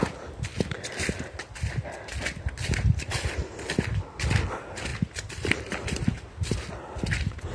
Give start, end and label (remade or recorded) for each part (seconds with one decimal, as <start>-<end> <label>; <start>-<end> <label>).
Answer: 0.0-0.5 recorded; 0.5-4.2 remade; 4.2-4.9 recorded; 4.9-6.7 remade; 6.7-7.5 recorded